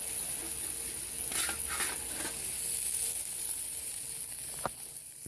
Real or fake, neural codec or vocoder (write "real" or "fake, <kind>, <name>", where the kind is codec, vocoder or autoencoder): real